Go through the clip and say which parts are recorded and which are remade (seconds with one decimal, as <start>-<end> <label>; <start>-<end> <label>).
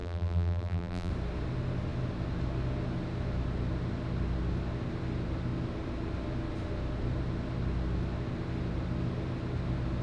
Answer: 0.0-1.1 remade; 1.1-10.0 recorded